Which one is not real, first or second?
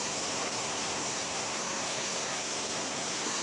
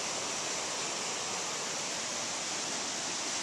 first